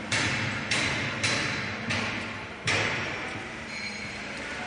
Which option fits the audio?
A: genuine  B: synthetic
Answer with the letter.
B